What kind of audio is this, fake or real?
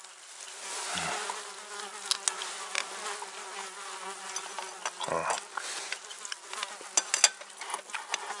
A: real